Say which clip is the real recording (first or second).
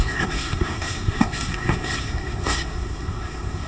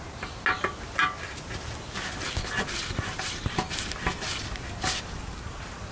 second